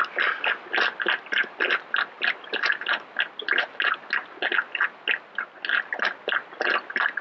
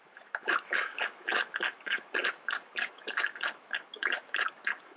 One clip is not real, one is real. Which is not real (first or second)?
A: second